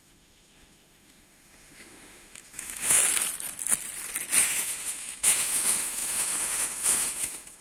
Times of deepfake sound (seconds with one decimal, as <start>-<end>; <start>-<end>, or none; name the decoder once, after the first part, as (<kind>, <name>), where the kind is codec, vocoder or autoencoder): 0.0-3.0 (autoencoder, DAC-VAE); 4.4-7.6